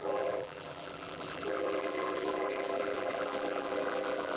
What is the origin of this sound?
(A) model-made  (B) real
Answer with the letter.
A